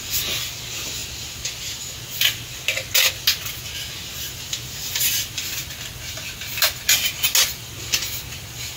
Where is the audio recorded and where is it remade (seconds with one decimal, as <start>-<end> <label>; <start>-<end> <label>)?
0.0-8.8 recorded